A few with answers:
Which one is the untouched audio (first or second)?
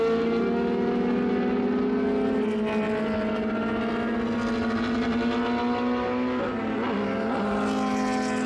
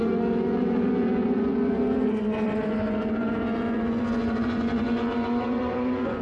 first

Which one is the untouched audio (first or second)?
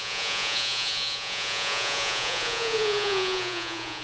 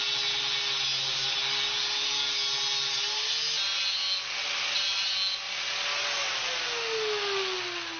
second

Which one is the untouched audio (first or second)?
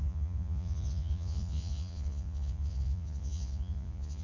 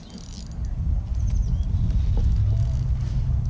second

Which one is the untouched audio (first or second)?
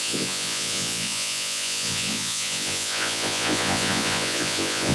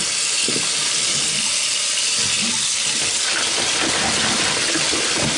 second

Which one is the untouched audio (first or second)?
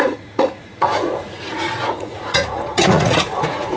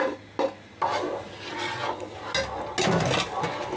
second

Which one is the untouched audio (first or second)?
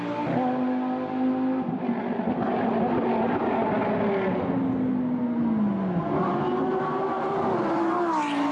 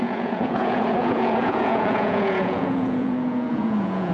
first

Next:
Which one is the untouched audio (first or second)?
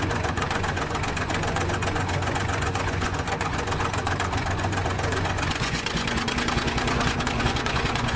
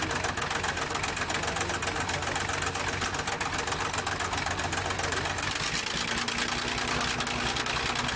second